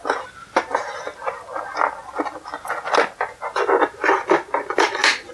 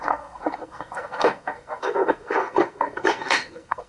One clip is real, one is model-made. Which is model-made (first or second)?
second